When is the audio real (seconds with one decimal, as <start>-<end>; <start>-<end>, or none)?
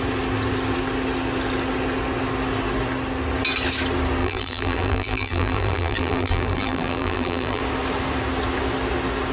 0.0-4.2; 7.6-9.3